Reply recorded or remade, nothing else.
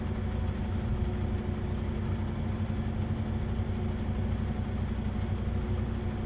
recorded